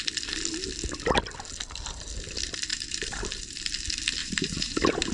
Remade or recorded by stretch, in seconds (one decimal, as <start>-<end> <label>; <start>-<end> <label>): 0.0-2.7 recorded; 2.7-3.8 remade; 3.8-4.2 recorded; 4.2-5.1 remade